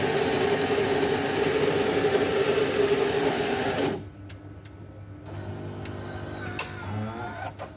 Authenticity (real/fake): real